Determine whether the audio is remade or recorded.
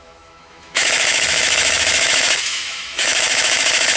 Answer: remade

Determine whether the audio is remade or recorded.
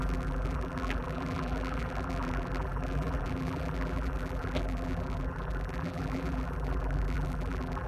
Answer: remade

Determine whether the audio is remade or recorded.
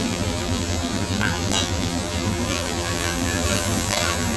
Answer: remade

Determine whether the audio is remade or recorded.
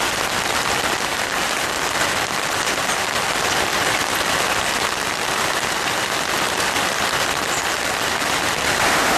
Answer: recorded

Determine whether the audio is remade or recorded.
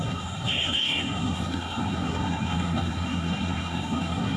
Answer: remade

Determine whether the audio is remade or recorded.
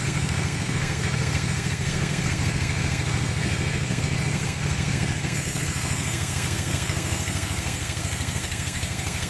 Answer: remade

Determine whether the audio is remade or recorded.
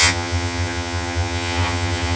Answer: remade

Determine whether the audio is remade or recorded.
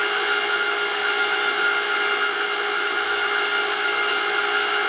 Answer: recorded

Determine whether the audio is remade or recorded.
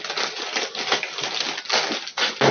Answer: recorded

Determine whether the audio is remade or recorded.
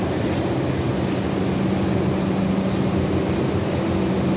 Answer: recorded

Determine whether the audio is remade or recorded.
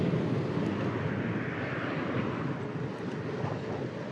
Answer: recorded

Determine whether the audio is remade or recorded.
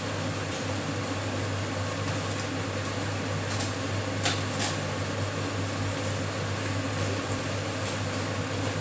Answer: recorded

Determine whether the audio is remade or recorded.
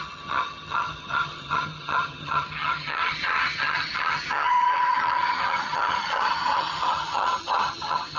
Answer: remade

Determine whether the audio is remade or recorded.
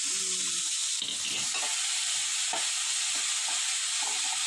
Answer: recorded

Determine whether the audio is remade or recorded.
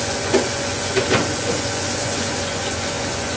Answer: remade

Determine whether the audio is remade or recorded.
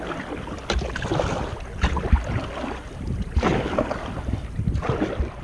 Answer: recorded